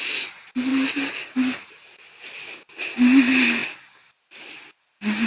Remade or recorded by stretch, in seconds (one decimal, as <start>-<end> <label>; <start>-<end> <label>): 0.0-5.3 recorded